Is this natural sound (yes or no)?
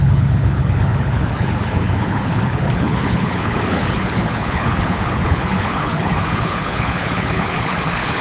no